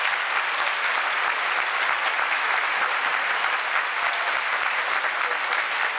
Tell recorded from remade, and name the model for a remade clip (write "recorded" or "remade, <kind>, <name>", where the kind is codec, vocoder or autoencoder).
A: recorded